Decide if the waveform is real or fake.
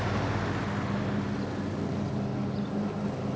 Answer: real